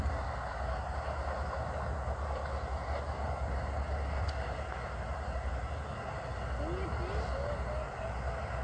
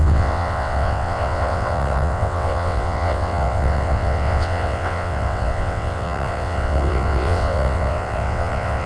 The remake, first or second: second